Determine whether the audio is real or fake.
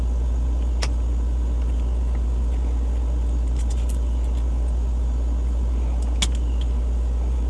real